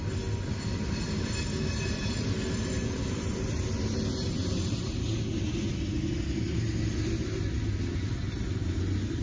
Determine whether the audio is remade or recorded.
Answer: recorded